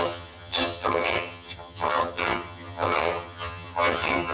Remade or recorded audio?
remade